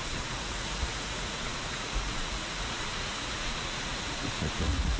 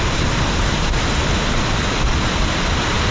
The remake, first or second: first